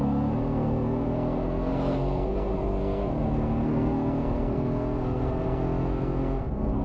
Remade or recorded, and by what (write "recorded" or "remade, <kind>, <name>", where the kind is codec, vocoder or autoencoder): remade, codec, SNAC